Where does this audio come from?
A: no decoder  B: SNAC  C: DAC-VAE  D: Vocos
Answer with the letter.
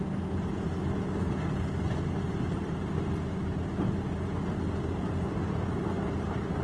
A